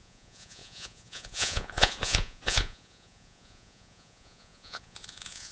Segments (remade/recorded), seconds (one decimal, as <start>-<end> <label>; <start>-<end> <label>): 0.0-5.5 remade